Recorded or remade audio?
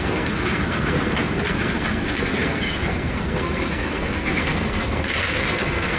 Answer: remade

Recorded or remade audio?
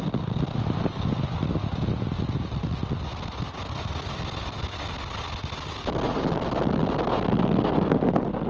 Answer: recorded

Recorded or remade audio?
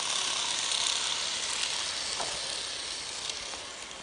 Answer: recorded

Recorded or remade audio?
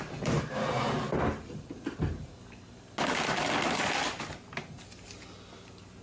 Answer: recorded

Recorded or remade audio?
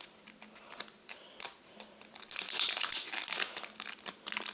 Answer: recorded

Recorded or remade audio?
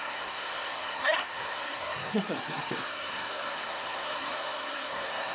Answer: remade